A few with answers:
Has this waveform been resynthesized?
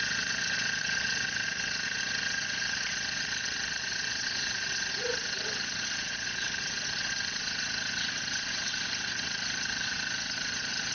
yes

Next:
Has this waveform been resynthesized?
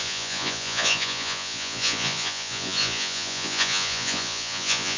yes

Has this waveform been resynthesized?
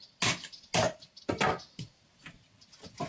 no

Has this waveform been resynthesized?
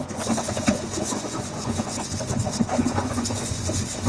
yes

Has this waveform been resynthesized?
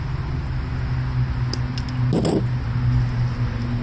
no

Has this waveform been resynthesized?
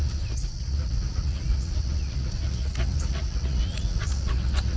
yes